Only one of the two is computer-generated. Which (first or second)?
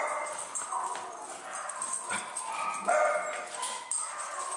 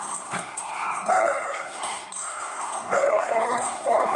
second